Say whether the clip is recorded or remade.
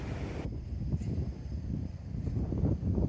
remade